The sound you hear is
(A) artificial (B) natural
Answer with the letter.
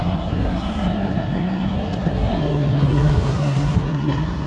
A